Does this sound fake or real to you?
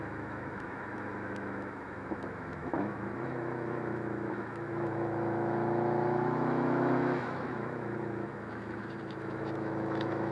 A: fake